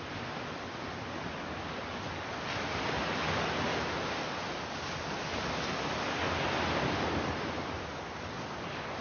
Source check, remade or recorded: recorded